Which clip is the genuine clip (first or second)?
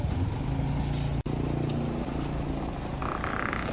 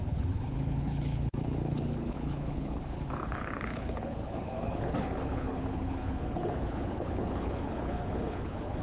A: first